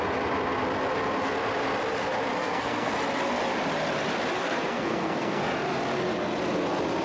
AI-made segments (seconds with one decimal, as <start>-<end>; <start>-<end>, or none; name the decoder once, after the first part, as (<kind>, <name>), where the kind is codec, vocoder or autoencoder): 2.3-2.9 (codec, SNAC); 4.4-5.4